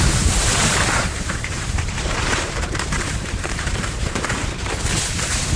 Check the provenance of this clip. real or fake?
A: fake